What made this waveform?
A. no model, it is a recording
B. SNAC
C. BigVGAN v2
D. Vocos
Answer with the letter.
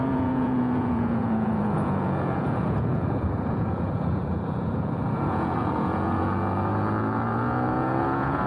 D